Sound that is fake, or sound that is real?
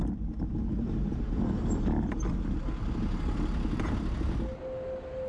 real